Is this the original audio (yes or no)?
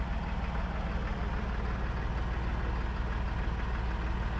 yes